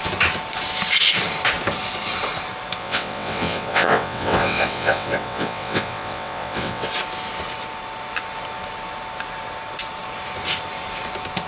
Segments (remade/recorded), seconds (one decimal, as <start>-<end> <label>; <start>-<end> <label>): 0.0-2.8 recorded; 2.8-6.9 remade; 6.9-11.5 recorded